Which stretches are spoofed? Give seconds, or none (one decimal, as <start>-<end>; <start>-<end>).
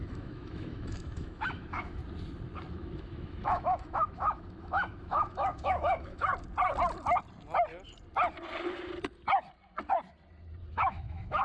0.0-2.0; 2.7-6.3; 10.7-11.4